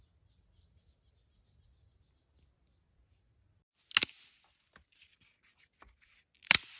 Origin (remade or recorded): recorded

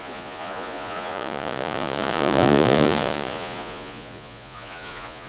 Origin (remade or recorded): remade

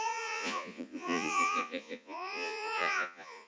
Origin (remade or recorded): remade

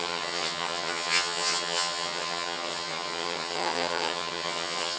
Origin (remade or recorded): remade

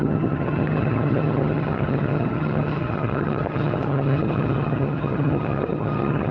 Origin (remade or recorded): remade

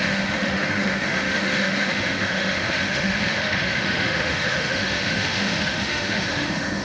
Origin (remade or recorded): remade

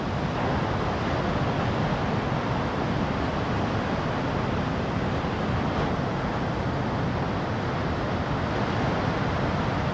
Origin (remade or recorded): recorded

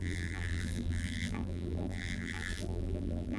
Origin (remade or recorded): remade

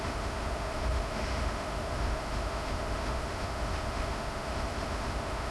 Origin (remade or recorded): remade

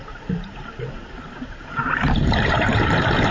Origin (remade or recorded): remade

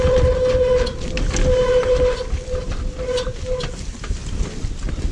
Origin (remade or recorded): recorded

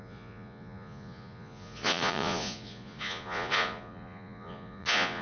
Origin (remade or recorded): remade